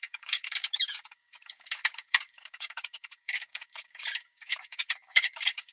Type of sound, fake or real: fake